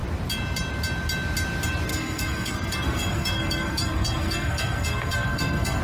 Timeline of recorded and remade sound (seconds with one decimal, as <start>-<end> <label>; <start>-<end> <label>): 0.0-1.9 recorded; 1.9-5.8 remade